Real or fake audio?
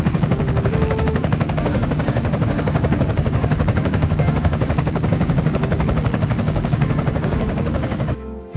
fake